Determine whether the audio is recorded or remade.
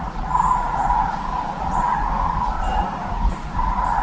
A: remade